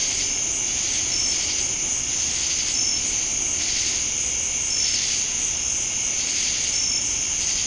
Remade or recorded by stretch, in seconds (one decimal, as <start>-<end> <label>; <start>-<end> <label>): 0.0-7.7 recorded

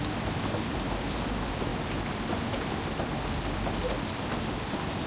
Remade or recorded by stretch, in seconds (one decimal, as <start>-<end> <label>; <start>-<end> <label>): 0.0-5.1 recorded

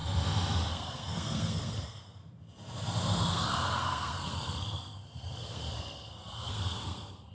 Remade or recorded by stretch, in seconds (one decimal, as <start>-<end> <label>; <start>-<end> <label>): 0.0-0.7 recorded; 0.7-2.2 remade; 2.2-3.3 recorded; 3.3-7.3 remade